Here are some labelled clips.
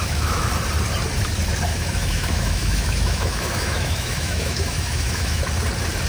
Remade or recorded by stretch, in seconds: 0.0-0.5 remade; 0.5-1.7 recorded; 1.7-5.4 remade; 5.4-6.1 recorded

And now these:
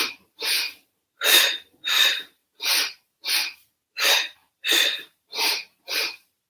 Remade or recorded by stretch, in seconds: 0.0-2.4 remade; 2.4-3.9 recorded; 3.9-6.5 remade

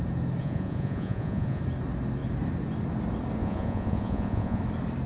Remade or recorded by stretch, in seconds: 0.0-0.4 recorded; 0.4-1.6 remade; 1.6-3.4 recorded; 3.4-4.6 remade; 4.6-5.1 recorded

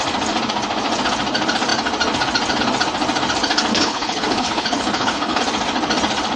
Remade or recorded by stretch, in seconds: 0.0-3.7 recorded; 3.7-5.4 remade; 5.4-6.4 recorded

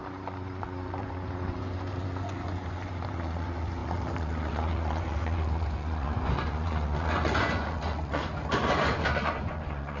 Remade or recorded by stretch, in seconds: 0.0-8.2 remade; 8.2-8.8 recorded; 8.8-10.0 remade

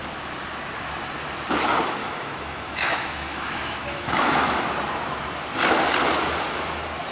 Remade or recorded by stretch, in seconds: 0.0-2.0 recorded; 2.0-4.6 remade; 4.6-7.1 recorded